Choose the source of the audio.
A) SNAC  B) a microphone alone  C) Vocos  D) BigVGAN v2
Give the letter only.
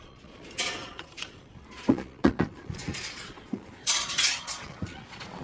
C